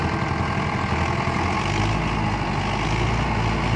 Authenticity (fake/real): real